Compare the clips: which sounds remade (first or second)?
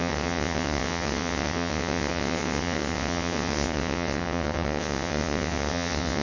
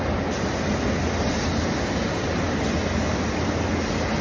first